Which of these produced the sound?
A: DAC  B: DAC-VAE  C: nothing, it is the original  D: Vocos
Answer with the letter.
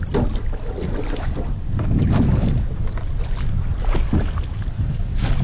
C